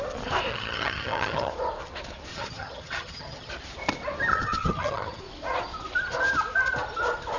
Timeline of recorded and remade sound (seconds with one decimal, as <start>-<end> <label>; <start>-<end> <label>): 0.0-0.5 recorded; 0.5-1.5 remade; 1.5-2.3 recorded; 2.3-3.5 remade; 3.5-4.3 recorded; 4.3-5.2 remade; 5.2-7.4 recorded